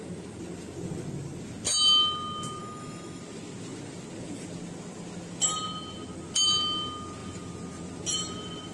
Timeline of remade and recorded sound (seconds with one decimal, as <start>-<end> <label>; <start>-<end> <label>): 0.0-2.6 recorded; 2.6-3.2 remade; 3.2-8.7 recorded